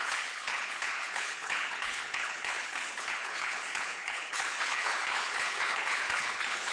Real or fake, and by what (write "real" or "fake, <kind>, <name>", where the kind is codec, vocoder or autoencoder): fake, codec, HILCodec